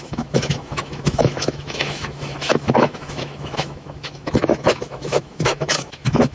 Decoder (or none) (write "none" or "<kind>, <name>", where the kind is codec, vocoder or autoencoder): autoencoder, DAC-VAE